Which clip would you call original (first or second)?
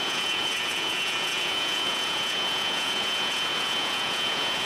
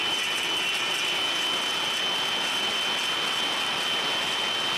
second